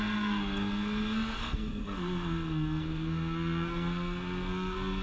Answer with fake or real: fake